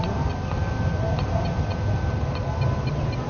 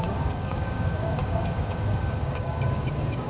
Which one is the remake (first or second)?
second